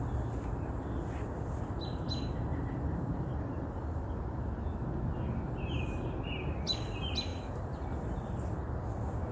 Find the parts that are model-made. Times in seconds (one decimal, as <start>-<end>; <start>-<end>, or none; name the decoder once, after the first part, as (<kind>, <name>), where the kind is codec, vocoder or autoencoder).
2.5-4.1 (vocoder, BigVGAN v2); 7.3-7.8